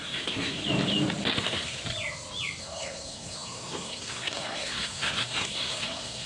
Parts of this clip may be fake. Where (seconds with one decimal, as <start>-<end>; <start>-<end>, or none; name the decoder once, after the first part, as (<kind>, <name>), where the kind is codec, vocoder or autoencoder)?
0.0-0.6 (codec, SNAC); 1.4-1.8; 2.6-6.3

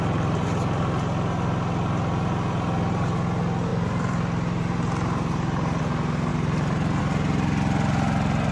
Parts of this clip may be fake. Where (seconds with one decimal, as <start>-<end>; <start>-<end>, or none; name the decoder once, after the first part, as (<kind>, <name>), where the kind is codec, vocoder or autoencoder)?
3.7-5.8 (vocoder, BigVGAN v2); 6.3-7.0

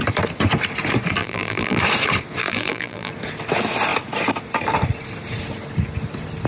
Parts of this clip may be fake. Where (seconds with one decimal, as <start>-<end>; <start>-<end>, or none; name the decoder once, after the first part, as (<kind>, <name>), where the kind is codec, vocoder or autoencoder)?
1.2-1.8 (vocoder, BigVGAN v2); 2.4-3.1